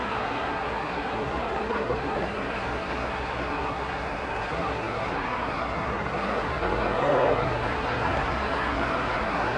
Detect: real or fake fake